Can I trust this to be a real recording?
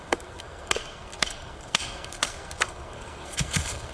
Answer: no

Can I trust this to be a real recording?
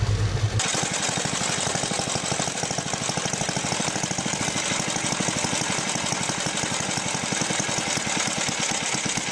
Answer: yes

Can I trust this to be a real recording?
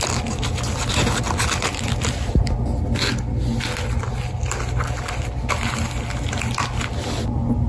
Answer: yes